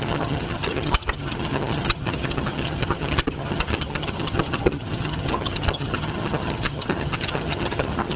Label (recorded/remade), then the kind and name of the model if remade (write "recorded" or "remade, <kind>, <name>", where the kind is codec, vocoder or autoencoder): remade, vocoder, HiFi-GAN